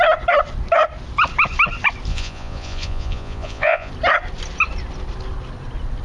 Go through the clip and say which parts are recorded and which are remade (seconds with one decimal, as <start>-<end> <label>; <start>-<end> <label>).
0.0-2.1 recorded; 2.1-3.9 remade; 3.9-6.0 recorded